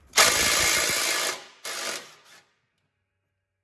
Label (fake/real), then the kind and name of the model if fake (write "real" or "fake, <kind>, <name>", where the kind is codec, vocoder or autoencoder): real